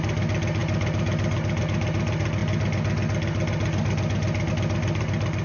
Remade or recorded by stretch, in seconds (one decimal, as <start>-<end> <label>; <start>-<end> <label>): 0.0-5.4 recorded